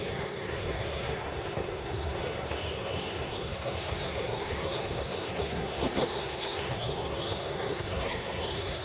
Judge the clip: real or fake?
fake